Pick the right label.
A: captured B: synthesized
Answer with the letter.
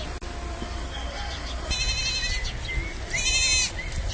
A